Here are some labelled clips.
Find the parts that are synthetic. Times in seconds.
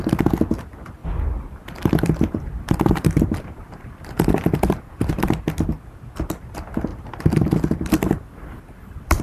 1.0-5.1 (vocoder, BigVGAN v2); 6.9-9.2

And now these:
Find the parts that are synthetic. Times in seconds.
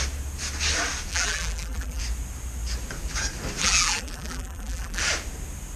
1.1-2.0 (vocoder, BigVGAN v2); 3.6-5.0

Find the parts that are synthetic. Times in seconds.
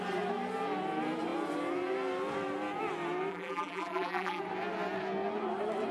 3.3-4.4 (vocoder, BigVGAN v2)